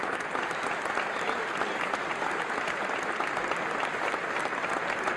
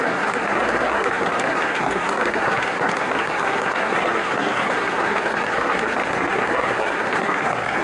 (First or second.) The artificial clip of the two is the second